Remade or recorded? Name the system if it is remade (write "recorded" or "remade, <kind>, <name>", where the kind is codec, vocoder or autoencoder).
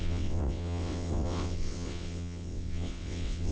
remade, vocoder, WaveNeXt